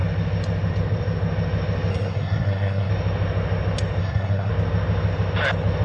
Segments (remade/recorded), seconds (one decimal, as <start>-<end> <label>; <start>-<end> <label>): 0.0-1.9 recorded; 1.9-2.9 remade; 2.9-4.0 recorded; 4.0-4.5 remade; 4.5-5.8 recorded